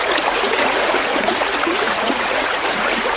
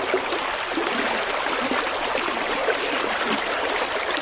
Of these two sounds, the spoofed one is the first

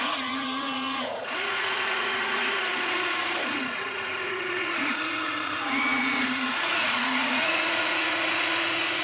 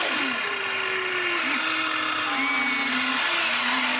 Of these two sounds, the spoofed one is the first